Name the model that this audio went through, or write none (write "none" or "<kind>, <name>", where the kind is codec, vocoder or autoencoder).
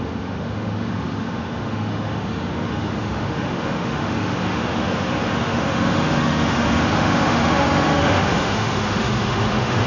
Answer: autoencoder, DAC-VAE